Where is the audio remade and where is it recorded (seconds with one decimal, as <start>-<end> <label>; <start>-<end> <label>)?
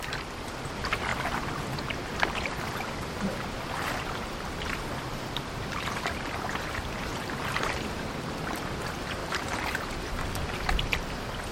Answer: 0.0-11.5 remade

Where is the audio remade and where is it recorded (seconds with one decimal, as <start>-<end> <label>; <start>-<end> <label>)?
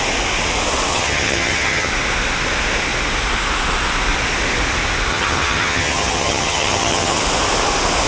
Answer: 0.0-0.9 recorded; 0.9-1.9 remade; 1.9-5.1 recorded; 5.1-7.2 remade; 7.2-8.1 recorded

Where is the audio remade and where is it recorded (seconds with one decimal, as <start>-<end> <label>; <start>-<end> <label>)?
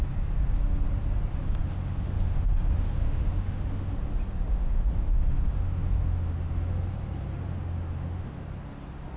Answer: 0.0-1.3 recorded; 1.3-3.9 remade; 3.9-4.5 recorded; 4.5-6.7 remade; 6.7-7.5 recorded; 7.5-8.5 remade; 8.5-9.2 recorded